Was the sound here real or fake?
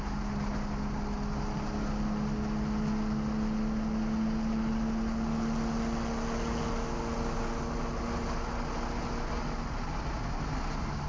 real